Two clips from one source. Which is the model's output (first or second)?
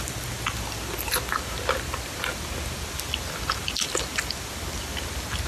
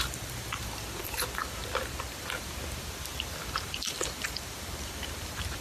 second